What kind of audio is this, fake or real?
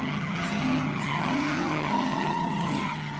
fake